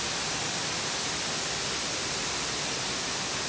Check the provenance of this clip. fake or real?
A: real